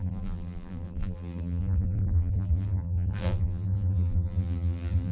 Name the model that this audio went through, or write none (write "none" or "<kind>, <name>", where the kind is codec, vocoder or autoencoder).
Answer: vocoder, BigVGAN v2